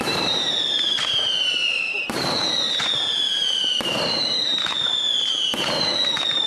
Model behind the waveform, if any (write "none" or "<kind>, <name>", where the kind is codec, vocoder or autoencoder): vocoder, BigVGAN v2